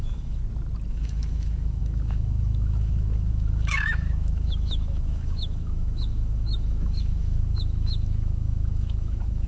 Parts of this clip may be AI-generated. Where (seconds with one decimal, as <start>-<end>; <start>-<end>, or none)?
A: 0.0-0.4; 0.9-9.5